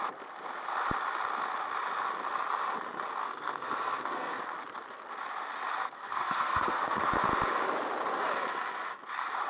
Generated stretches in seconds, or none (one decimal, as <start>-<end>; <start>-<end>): 3.2-4.4; 5.8-7.1